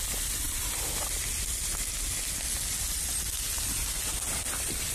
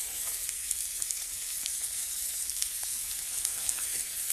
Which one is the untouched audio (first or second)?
first